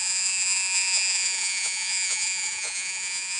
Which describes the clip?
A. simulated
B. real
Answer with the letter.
A